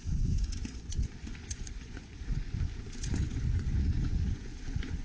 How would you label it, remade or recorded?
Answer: remade